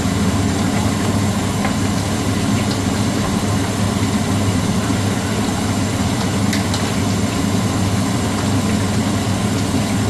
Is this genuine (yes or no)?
yes